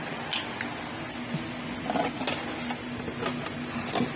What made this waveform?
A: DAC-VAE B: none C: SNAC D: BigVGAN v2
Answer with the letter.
B